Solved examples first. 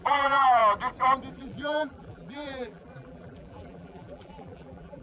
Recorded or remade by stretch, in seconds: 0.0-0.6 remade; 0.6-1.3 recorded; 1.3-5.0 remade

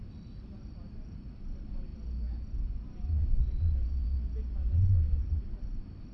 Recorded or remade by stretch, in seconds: 0.0-1.9 remade; 1.9-5.2 recorded; 5.2-6.1 remade

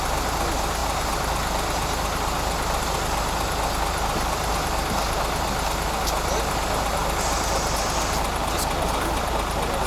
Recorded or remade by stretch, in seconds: 0.0-9.9 recorded

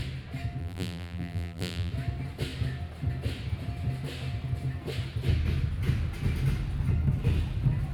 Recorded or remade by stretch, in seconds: 0.0-0.6 recorded; 0.6-1.9 remade; 1.9-7.9 recorded